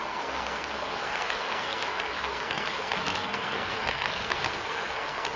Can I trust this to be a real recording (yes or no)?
no